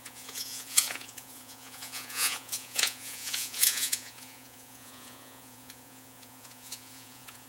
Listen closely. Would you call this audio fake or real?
fake